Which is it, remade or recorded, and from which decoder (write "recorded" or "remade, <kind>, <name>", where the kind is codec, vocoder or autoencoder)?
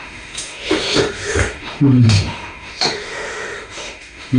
remade, autoencoder, DAC-VAE